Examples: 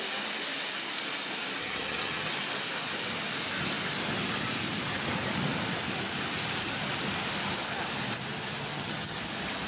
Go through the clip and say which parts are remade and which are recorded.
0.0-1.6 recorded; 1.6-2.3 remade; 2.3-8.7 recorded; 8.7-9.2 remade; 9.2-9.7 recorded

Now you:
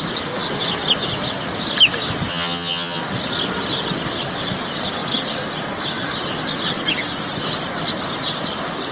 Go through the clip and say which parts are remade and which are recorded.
0.0-2.3 recorded; 2.3-3.0 remade; 3.0-8.9 recorded

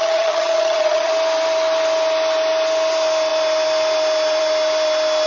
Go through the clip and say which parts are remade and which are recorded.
0.0-1.1 remade; 1.1-5.3 recorded

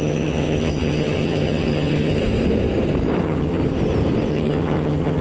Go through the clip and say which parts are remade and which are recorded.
0.0-2.2 remade; 2.2-3.2 recorded; 3.2-3.6 remade; 3.6-4.3 recorded; 4.3-5.2 remade

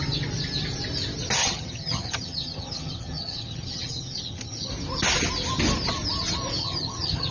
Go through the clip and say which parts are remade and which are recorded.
0.0-1.4 recorded; 1.4-4.7 remade; 4.7-6.6 recorded; 6.6-7.3 remade